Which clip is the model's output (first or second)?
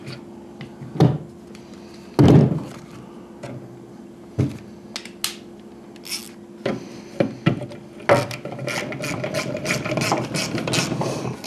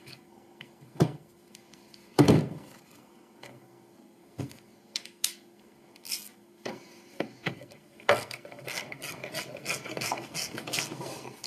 second